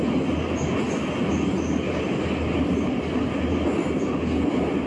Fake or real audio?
real